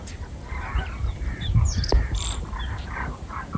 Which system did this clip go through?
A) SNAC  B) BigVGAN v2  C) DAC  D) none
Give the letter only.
B